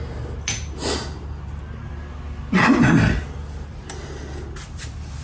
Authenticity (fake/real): real